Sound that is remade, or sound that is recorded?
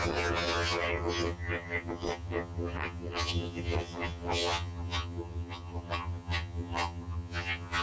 remade